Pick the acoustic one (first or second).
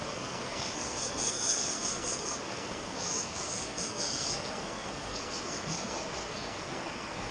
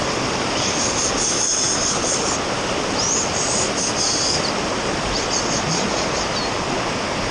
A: second